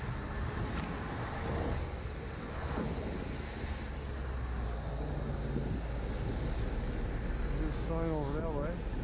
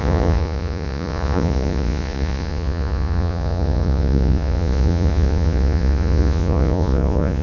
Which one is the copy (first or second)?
second